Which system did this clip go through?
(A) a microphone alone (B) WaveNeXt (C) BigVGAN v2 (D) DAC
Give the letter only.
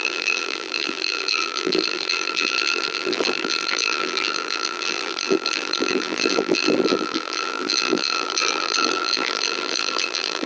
C